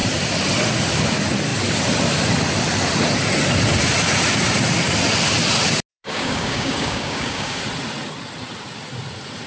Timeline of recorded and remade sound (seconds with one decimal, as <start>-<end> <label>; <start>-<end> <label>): 0.0-5.9 recorded; 5.9-7.6 remade; 7.6-9.5 recorded